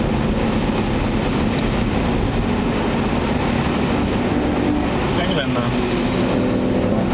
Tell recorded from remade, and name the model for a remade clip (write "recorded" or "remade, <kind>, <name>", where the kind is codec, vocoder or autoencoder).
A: recorded